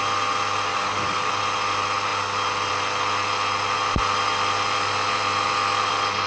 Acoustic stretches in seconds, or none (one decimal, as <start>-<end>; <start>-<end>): 0.0-0.7; 1.4-6.3